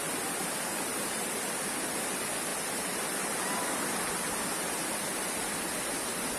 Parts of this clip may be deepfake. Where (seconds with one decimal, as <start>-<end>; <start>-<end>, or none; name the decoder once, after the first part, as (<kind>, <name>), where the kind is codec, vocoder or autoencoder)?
0.9-1.5 (vocoder, BigVGAN v2)